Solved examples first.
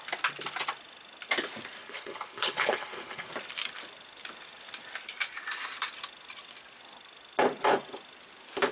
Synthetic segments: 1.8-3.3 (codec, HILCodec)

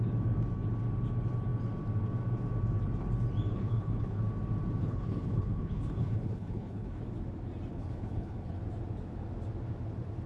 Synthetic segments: 3.5-4.2 (codec, HILCodec); 4.8-7.0; 7.7-8.6

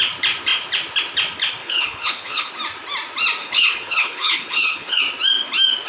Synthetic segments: 1.6-2.5 (codec, HILCodec); 3.4-5.0